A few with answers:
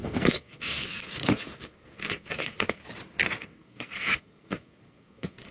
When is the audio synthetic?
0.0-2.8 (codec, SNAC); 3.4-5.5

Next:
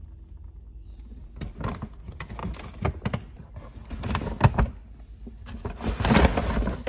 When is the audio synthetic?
none

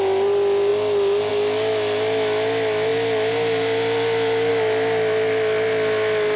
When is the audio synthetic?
none